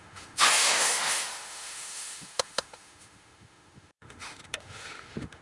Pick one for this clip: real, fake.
fake